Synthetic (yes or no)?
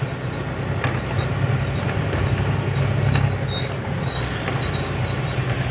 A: no